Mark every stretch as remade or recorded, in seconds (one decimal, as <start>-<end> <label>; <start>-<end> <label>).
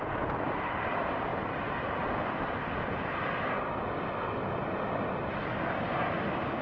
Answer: 0.0-6.6 recorded